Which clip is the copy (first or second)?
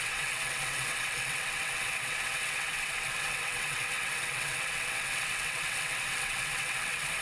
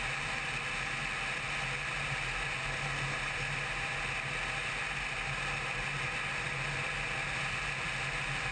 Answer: first